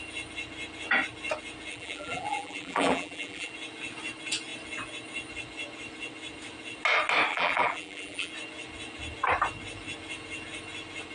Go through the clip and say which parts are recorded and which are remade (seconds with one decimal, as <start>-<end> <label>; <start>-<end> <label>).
0.0-1.7 recorded; 1.7-3.5 remade; 3.5-7.3 recorded; 7.3-8.3 remade; 8.3-11.1 recorded